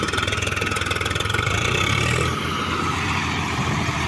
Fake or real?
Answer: fake